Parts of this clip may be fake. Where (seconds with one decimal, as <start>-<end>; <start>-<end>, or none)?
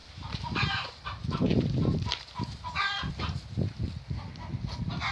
0.0-3.1